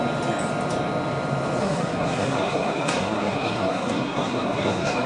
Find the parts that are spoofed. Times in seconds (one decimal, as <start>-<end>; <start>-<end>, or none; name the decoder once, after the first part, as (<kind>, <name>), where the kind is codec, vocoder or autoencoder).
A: 1.6-5.1 (codec, SNAC)